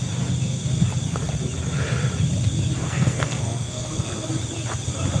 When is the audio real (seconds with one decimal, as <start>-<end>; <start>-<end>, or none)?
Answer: 0.0-2.8; 4.3-5.2